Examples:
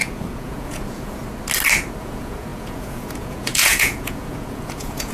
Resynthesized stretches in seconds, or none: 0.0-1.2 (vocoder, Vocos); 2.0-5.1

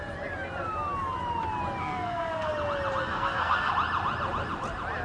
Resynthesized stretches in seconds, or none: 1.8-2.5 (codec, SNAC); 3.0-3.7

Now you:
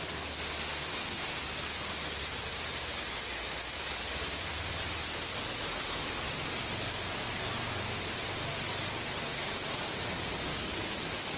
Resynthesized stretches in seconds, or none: 10.5-11.4 (codec, DAC)

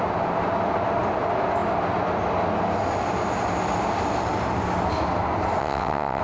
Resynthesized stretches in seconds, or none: 5.6-6.2 (vocoder, WaveNeXt)

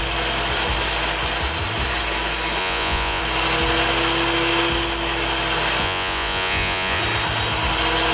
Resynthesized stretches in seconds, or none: 2.6-3.2 (vocoder, Vocos); 5.8-7.0